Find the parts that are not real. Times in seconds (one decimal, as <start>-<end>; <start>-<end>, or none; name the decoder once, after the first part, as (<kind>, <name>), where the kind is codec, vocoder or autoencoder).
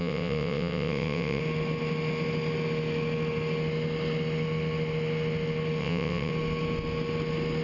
0.0-1.4 (vocoder, WaveNeXt); 5.8-6.3